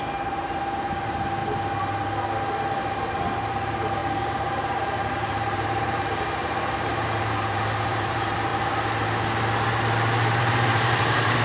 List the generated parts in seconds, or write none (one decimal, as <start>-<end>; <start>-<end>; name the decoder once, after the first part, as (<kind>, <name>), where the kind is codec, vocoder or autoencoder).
0.0-1.4 (vocoder, BigVGAN v2); 2.8-8.5; 10.4-11.4